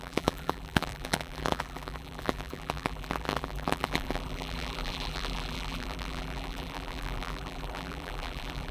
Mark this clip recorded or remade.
remade